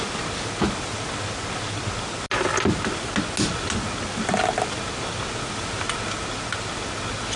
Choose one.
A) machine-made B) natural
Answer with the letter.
B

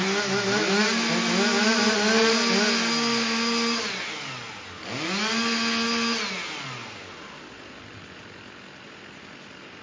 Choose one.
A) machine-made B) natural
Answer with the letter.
B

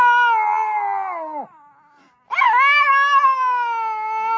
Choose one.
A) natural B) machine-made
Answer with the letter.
A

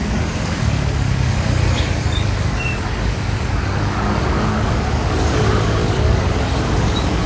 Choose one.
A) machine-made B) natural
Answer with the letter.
A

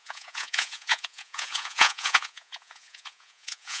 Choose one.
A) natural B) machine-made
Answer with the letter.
B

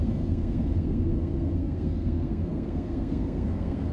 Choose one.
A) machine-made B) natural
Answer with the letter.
A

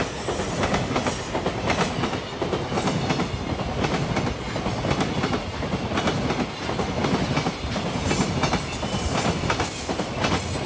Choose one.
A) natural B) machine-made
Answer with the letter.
A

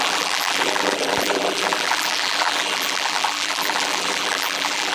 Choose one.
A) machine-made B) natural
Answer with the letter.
A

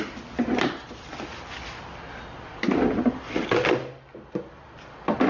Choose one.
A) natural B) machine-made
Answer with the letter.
A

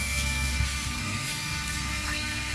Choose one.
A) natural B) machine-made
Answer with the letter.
B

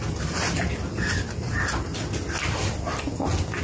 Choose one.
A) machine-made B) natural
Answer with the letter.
B